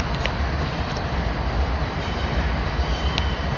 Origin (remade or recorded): remade